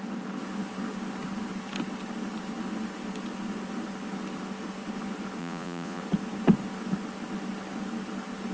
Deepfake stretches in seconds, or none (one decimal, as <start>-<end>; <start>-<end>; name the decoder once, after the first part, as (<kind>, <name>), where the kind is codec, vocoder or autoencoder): 5.4-6.0 (vocoder, Vocos)